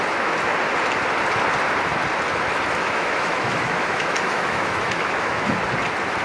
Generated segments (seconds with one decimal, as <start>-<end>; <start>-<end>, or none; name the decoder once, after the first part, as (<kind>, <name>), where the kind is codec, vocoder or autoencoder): 2.8-5.6 (autoencoder, DAC-VAE)